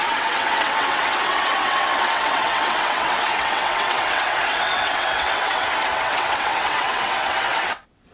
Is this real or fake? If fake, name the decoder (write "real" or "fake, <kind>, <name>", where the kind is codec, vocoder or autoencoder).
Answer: fake, vocoder, WaveNeXt